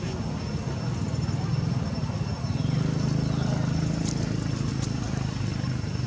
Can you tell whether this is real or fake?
real